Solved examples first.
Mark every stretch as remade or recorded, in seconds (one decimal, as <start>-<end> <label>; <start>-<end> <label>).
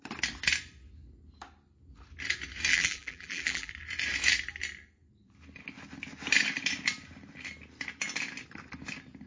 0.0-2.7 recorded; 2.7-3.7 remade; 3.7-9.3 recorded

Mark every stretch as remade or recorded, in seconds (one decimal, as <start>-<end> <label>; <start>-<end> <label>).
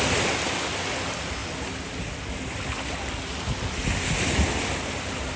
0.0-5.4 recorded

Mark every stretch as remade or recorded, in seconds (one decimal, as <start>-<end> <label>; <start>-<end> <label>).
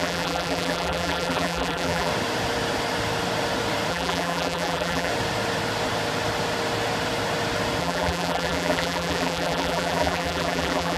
0.0-2.1 remade; 2.1-3.9 recorded; 3.9-5.1 remade; 5.1-7.8 recorded; 7.8-11.0 remade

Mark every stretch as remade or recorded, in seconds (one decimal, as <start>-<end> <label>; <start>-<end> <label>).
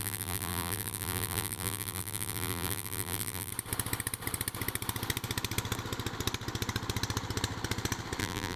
0.0-3.5 remade; 3.5-8.2 recorded; 8.2-8.6 remade